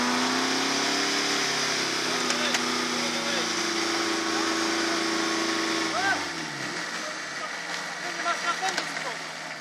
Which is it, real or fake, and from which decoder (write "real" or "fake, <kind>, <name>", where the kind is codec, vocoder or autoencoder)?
real